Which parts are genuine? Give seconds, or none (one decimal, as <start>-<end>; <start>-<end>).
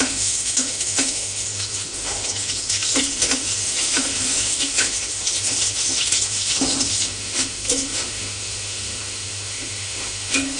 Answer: none